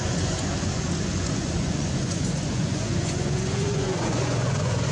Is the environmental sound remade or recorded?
remade